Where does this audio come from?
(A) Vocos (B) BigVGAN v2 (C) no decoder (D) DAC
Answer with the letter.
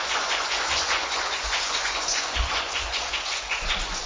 A